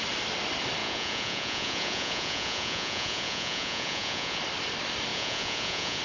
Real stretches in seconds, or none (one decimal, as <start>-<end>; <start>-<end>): 0.0-0.8; 4.4-5.1